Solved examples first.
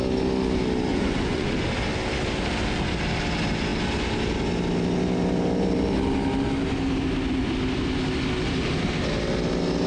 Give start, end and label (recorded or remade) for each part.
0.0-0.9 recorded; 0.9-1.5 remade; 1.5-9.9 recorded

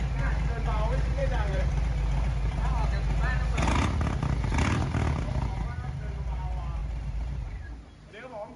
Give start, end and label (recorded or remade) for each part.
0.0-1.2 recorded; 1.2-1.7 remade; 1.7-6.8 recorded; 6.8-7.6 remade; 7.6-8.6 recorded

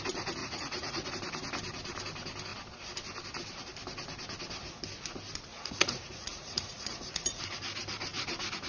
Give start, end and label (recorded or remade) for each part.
0.0-0.4 recorded; 0.4-1.1 remade; 1.1-5.5 recorded; 5.5-7.4 remade; 7.4-8.7 recorded

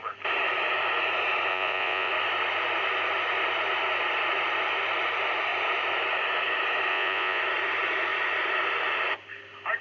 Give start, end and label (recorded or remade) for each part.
0.0-1.5 recorded; 1.5-2.1 remade; 2.1-6.9 recorded; 6.9-7.4 remade; 7.4-9.8 recorded

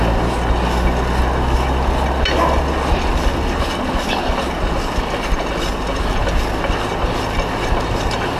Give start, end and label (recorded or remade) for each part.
0.0-8.4 recorded

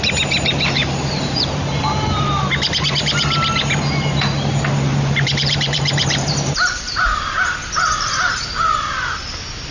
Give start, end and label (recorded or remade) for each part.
0.0-0.8 recorded; 0.8-1.6 remade; 1.6-4.9 recorded; 4.9-9.2 remade; 9.2-9.7 recorded

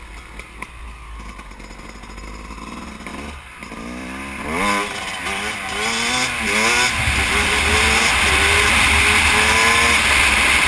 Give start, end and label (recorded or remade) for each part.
0.0-3.1 recorded; 3.1-4.4 remade; 4.4-10.7 recorded